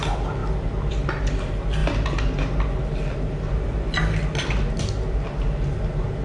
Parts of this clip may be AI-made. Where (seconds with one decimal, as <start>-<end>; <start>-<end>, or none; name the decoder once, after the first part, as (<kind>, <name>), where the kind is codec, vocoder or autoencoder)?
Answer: none

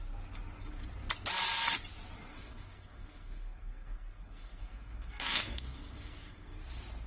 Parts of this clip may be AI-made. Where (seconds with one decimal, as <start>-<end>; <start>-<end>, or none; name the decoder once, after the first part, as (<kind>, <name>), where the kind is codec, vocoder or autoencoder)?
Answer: 2.3-6.6 (codec, SNAC)

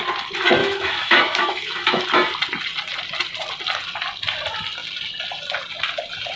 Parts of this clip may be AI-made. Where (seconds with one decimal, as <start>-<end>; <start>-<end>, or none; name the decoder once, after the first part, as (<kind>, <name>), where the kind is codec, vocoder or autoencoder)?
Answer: 0.6-2.0 (autoencoder, DAC-VAE)

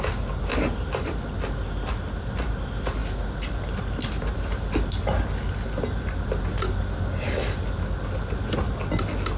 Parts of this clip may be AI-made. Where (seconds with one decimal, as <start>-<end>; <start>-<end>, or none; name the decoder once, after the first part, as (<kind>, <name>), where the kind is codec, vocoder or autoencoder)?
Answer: none

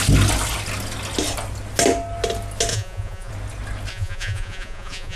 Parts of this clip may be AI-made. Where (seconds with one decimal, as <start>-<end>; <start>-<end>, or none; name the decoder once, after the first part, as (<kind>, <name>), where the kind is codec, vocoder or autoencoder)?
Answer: 2.7-3.3 (vocoder, Vocos); 3.9-5.2